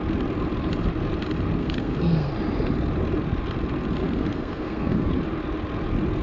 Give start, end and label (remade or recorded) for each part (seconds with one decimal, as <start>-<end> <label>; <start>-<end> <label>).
0.0-1.6 recorded; 1.6-2.3 remade; 2.3-4.0 recorded; 4.0-5.1 remade; 5.1-6.2 recorded